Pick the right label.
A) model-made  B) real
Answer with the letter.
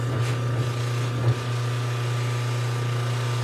B